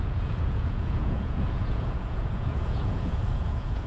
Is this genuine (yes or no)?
no